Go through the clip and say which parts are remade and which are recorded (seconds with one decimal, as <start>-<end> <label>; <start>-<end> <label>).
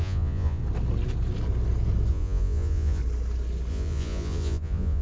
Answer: 0.0-0.6 remade; 0.6-2.1 recorded; 2.1-3.0 remade; 3.0-3.7 recorded; 3.7-5.0 remade